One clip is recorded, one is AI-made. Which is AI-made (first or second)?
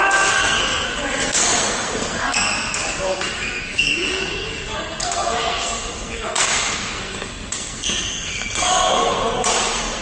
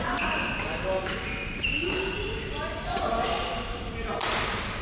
first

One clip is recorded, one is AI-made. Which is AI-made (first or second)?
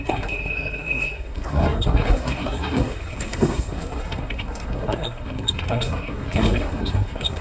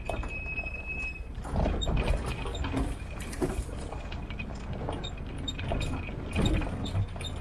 first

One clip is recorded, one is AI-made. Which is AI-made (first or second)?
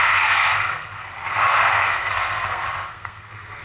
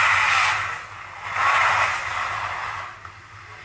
first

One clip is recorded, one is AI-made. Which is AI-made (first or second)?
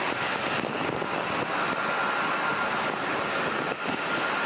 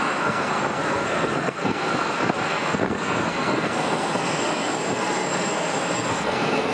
second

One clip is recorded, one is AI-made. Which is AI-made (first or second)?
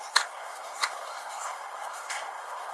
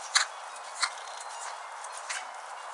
first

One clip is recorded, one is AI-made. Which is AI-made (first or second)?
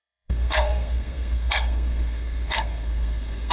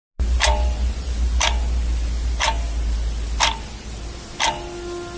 first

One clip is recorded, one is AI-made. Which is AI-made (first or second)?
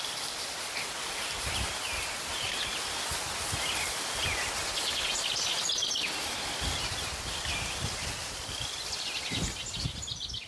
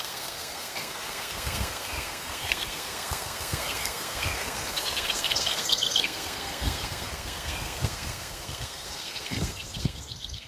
second